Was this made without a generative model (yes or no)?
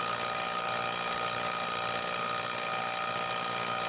yes